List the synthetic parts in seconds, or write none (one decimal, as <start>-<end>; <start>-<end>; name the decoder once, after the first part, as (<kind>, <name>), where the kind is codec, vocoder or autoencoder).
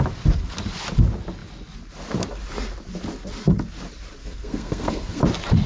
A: 4.2-5.2 (codec, SNAC)